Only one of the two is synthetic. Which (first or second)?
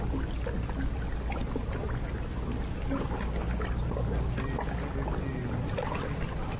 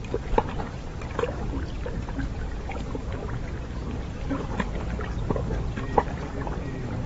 second